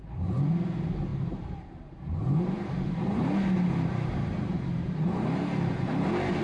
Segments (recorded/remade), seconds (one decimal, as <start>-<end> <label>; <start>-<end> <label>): 0.0-6.4 remade